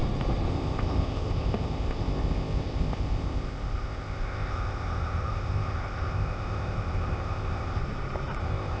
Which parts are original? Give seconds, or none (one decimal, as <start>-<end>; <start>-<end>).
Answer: 0.0-0.5; 7.8-8.4